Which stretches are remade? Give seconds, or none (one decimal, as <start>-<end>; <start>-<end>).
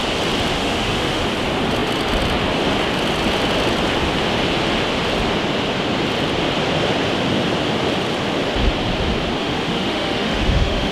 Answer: 0.6-1.2; 9.4-10.9